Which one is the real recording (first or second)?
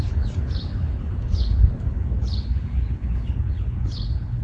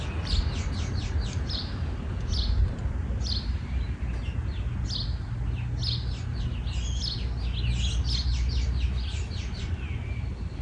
second